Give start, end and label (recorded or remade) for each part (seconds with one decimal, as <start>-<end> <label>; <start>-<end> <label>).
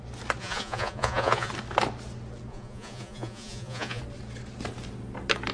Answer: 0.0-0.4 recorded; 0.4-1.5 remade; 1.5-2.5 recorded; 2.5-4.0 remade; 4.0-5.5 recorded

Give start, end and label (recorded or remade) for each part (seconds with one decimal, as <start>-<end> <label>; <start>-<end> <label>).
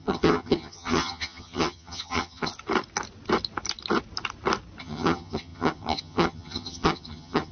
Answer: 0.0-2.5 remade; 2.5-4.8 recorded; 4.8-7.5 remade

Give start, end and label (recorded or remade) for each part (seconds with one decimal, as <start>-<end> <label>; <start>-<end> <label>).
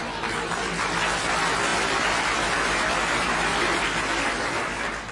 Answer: 0.0-5.1 recorded